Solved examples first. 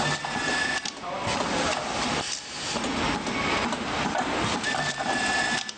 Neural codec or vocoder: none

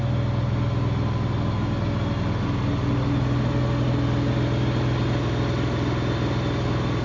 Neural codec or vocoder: none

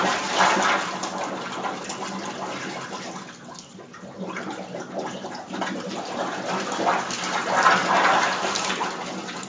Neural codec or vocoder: none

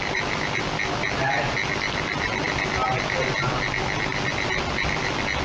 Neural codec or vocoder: none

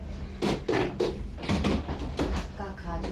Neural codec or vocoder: none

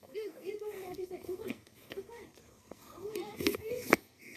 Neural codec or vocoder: codec, SNAC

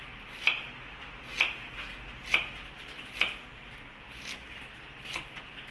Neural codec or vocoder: none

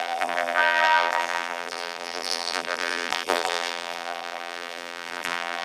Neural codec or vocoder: vocoder, BigVGAN v2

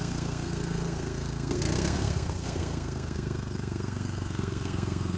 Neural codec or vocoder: codec, SNAC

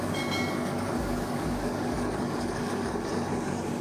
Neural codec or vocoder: codec, DAC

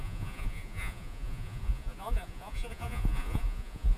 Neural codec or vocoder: vocoder, Vocos